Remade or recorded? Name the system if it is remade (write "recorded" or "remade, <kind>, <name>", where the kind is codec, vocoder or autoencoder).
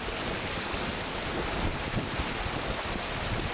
recorded